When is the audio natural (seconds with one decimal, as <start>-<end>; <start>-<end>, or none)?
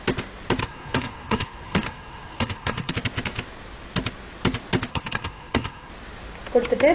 0.0-0.6; 2.9-4.9; 5.9-6.9